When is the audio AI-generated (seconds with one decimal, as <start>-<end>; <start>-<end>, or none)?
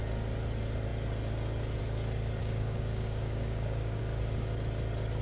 2.4-4.0